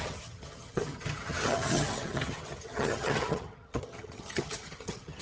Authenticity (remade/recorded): remade